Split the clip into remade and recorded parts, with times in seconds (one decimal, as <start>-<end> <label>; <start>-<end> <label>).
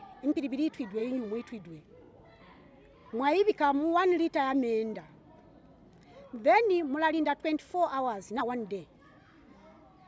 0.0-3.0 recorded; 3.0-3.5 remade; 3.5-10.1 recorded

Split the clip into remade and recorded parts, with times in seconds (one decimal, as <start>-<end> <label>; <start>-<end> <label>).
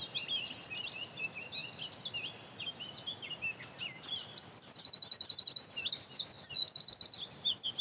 0.0-7.8 recorded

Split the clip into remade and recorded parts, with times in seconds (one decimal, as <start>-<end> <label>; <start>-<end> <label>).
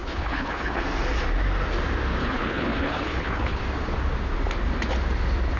0.0-0.8 remade; 0.8-2.2 recorded; 2.2-3.6 remade; 3.6-5.6 recorded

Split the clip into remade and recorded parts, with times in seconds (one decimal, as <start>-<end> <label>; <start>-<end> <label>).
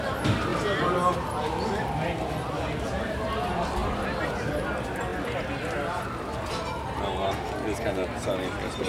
0.0-3.8 recorded; 3.8-4.5 remade; 4.5-5.1 recorded; 5.1-6.5 remade; 6.5-8.9 recorded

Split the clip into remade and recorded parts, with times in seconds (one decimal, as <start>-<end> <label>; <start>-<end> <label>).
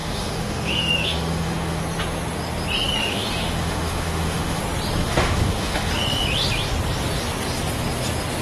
0.0-1.8 remade; 1.8-3.0 recorded; 3.0-4.6 remade; 4.6-5.0 recorded; 5.0-5.9 remade; 5.9-8.4 recorded